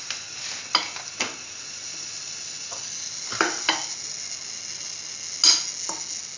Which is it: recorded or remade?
recorded